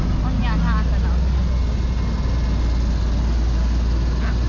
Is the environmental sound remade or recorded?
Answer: recorded